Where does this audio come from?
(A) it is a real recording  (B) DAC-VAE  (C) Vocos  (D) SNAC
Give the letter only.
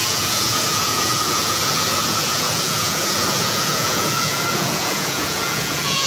C